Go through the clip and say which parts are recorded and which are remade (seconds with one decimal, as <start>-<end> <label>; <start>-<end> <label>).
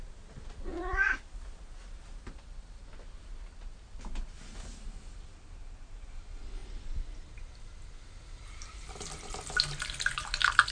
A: 0.0-10.7 recorded